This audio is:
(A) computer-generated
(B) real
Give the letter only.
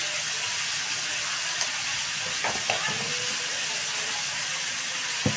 B